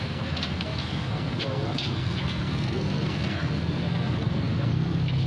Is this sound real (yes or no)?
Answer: no